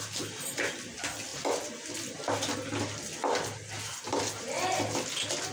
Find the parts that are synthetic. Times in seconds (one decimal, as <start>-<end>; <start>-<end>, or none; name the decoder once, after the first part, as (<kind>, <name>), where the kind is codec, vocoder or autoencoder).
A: none